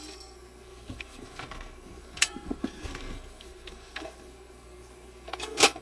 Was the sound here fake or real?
fake